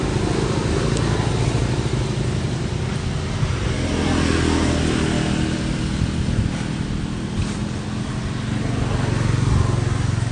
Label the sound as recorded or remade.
recorded